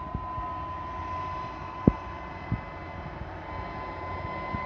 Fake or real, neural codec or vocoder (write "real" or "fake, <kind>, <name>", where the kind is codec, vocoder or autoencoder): real